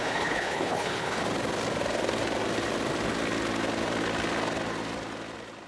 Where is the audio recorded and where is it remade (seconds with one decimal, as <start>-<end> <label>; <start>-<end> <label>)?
0.0-1.2 remade; 1.2-5.7 recorded